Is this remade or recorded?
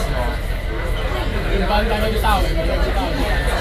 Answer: recorded